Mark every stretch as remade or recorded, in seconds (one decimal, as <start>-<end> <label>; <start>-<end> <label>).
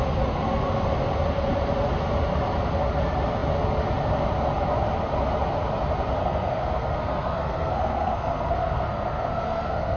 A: 0.0-6.2 recorded; 6.2-10.0 remade